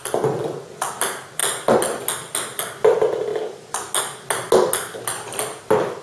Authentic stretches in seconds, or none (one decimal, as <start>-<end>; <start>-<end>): 0.0-6.0